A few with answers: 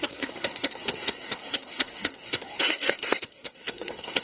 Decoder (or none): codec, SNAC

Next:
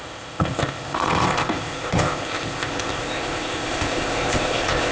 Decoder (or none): codec, ZipCodec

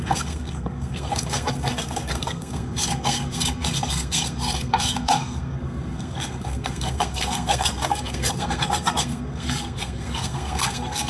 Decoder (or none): codec, SNAC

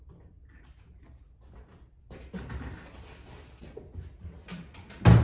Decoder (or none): none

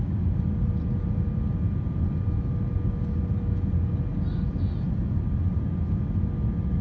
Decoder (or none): none